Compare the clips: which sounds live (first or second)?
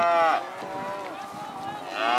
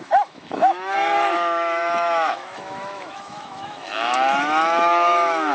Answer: first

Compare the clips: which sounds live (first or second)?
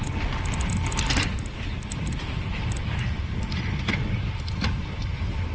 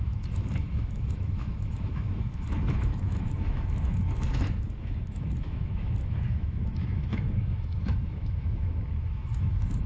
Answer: first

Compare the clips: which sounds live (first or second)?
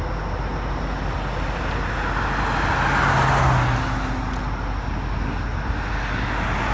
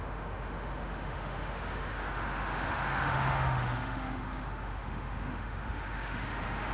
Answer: first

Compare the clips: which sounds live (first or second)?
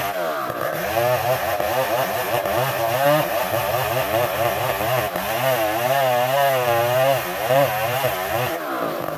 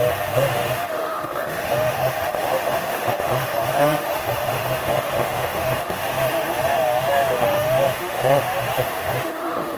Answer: first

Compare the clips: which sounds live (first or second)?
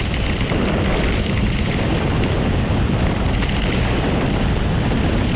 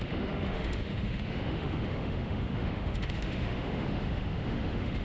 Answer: first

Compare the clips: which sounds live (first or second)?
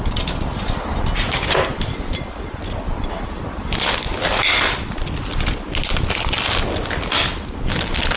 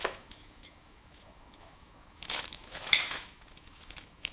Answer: first